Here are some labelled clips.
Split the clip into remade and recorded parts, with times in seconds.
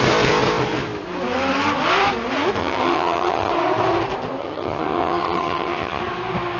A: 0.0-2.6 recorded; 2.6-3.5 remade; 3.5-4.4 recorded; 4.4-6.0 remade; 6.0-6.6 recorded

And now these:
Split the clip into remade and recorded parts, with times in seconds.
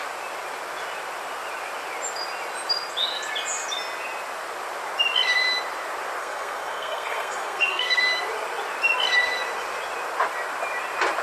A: 0.0-6.2 recorded; 6.2-8.0 remade; 8.0-11.2 recorded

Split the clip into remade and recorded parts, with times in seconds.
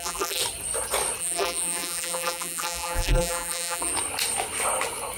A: 0.0-0.4 remade; 0.4-1.2 recorded; 1.2-3.9 remade; 3.9-5.2 recorded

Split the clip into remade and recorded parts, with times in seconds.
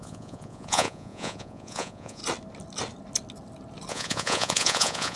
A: 0.0-2.2 remade; 2.2-3.9 recorded; 3.9-5.2 remade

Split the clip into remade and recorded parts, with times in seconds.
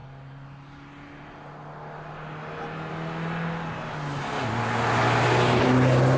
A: 0.0-6.2 recorded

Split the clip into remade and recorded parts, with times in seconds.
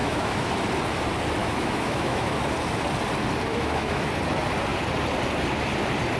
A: 0.0-0.5 remade; 0.5-1.4 recorded; 1.4-2.4 remade; 2.4-3.5 recorded; 3.5-4.1 remade; 4.1-6.2 recorded